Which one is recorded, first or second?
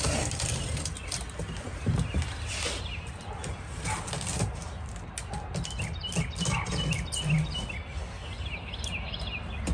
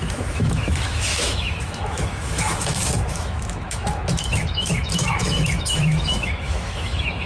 first